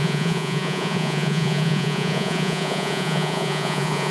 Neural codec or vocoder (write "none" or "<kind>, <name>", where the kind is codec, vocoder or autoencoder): vocoder, Vocos